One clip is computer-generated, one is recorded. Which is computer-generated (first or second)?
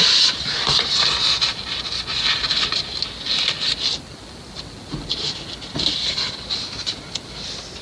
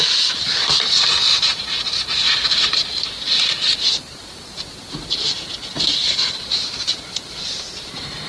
second